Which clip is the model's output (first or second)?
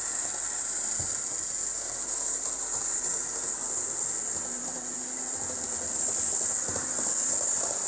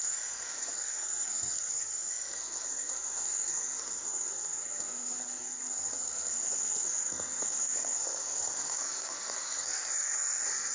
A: second